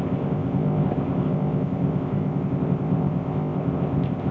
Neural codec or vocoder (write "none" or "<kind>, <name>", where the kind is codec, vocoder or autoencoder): codec, ZipCodec